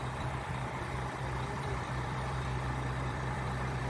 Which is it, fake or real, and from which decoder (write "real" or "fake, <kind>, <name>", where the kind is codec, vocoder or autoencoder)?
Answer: fake, vocoder, BigVGAN v2